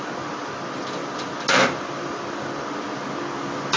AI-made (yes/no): no